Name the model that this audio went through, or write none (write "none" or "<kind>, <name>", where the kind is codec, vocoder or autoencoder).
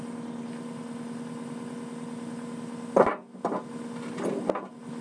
none